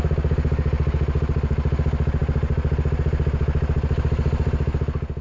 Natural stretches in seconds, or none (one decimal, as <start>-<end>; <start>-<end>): 0.0-5.2